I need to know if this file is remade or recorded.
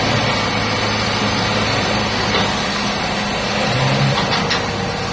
recorded